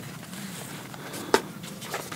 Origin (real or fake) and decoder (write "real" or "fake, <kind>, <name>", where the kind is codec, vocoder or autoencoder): fake, vocoder, BigVGAN v2